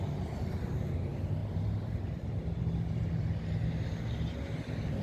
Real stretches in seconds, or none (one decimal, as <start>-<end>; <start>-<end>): 0.0-1.4; 3.4-5.0